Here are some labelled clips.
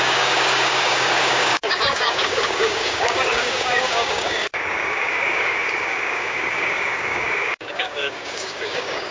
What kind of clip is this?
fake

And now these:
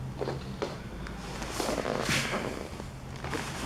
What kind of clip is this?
real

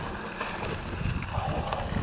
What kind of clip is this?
real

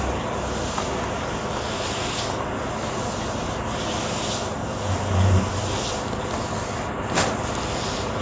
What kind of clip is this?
real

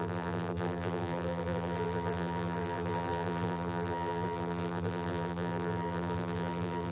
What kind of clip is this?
fake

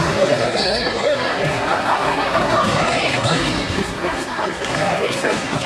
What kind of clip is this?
fake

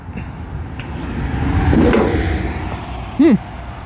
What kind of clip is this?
real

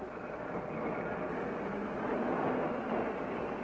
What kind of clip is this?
real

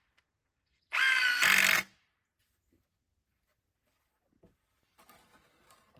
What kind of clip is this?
real